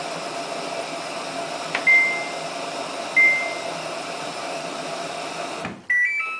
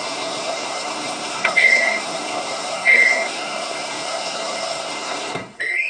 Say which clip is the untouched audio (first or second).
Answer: first